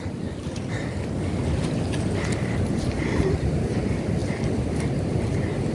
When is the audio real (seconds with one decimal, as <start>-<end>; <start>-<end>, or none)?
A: 0.0-5.7